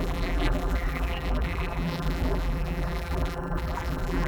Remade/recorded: remade